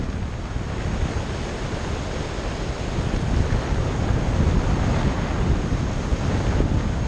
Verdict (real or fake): real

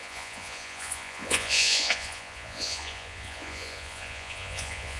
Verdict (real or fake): fake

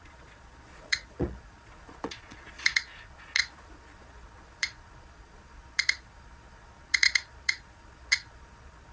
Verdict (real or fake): fake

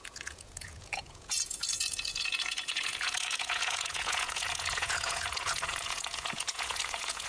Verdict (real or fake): fake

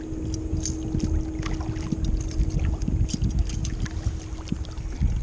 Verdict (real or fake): real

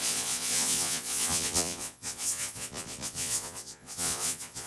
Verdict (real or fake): fake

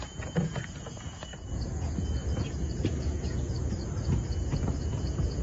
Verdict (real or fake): fake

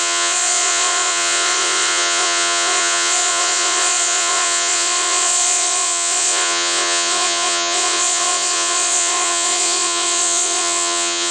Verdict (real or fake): fake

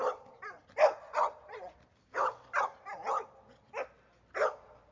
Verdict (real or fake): real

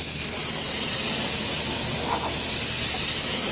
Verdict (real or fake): real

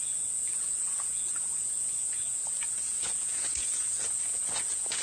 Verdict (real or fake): fake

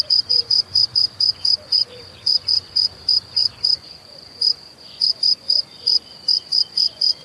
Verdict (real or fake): fake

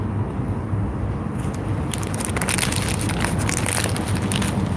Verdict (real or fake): real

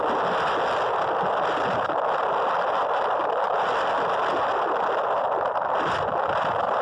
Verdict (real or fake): real